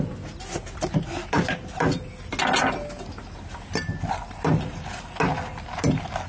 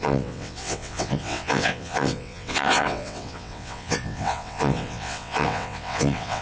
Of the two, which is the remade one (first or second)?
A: second